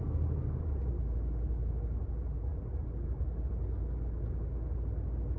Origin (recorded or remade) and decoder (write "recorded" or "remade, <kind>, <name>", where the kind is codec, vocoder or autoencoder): recorded